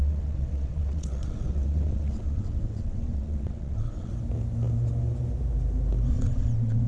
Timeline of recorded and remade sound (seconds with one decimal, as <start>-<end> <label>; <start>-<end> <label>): 0.0-4.1 remade; 4.1-6.1 recorded; 6.1-6.9 remade